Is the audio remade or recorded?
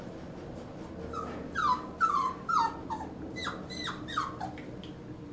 recorded